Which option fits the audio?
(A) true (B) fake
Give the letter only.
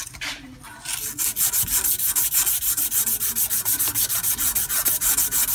A